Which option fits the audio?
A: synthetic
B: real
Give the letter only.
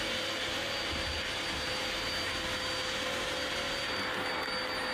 B